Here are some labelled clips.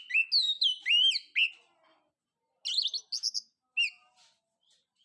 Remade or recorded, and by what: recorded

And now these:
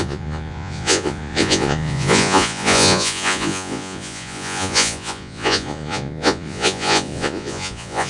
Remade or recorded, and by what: remade, vocoder, Vocos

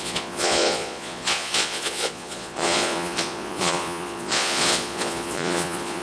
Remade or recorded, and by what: remade, vocoder, Vocos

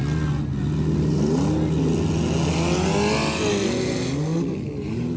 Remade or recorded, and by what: recorded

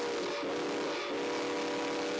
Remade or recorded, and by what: recorded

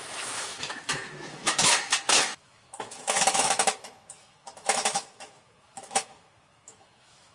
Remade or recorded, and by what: remade, autoencoder, DAC-VAE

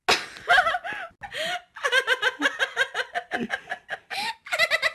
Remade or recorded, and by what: recorded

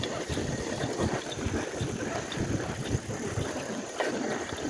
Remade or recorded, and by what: recorded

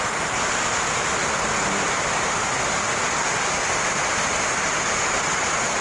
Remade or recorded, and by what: recorded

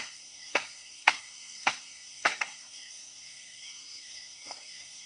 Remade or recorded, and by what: remade, codec, SNAC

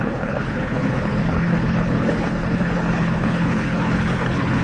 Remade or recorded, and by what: remade, codec, HILCodec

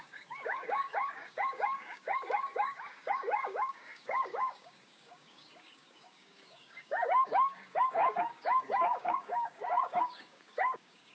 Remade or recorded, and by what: remade, codec, DAC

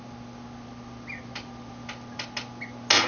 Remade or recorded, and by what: recorded